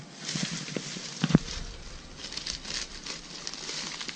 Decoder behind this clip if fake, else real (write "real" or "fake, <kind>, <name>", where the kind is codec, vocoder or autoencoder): real